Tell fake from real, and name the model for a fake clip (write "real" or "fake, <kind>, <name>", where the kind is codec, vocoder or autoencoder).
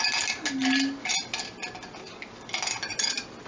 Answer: real